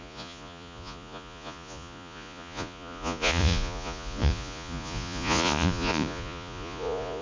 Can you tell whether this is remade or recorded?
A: remade